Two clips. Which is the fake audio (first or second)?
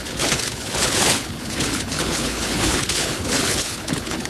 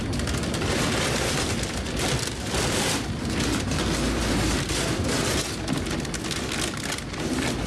first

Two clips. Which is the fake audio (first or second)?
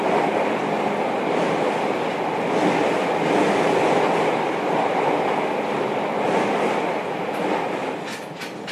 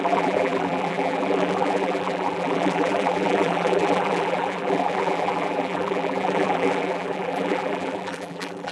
second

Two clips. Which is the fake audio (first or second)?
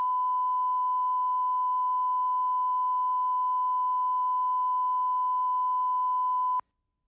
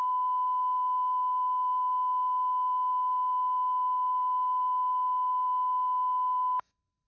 second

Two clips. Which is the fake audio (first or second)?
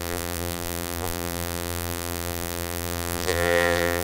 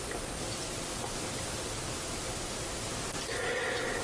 first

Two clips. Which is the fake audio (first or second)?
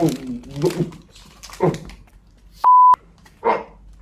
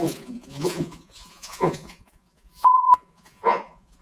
second